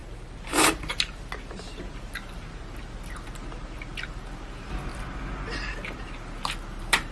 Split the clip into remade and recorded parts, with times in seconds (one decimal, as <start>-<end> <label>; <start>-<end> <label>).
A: 0.0-4.9 remade; 4.9-6.0 recorded; 6.0-7.1 remade